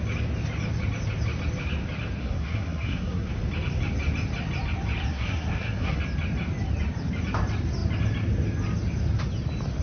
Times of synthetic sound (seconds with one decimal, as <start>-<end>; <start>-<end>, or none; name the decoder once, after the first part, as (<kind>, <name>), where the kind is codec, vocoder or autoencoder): 2.2-3.3 (codec, SNAC); 5.1-6.0